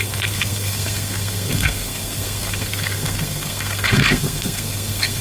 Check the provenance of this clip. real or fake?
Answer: fake